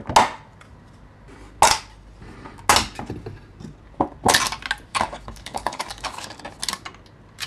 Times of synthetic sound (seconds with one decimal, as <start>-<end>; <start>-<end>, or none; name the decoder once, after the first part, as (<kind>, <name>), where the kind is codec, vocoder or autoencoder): 4.9-6.4 (codec, DAC)